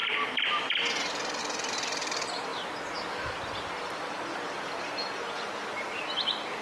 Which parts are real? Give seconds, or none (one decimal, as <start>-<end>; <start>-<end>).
0.0-6.6